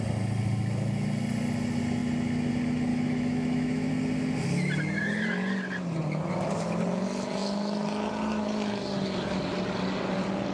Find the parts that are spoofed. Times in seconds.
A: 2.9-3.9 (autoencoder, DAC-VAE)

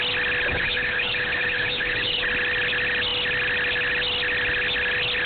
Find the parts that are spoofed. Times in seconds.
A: 0.5-2.3 (codec, HILCodec)